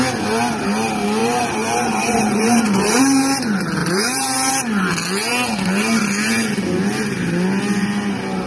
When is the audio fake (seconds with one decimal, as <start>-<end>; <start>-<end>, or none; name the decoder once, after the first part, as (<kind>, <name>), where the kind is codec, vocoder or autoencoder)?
1.2-3.0 (vocoder, BigVGAN v2); 3.8-4.5